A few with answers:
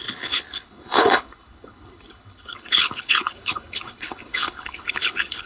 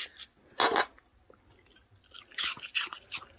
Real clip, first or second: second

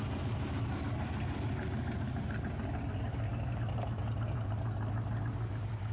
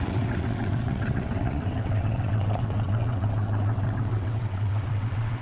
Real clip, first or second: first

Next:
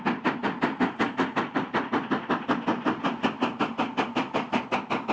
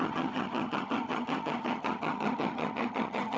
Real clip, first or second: first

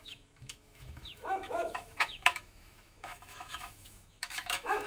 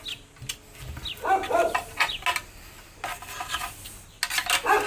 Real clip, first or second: second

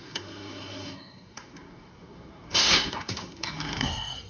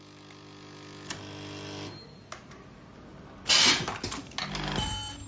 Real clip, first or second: second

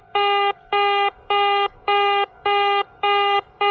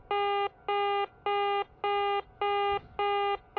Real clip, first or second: second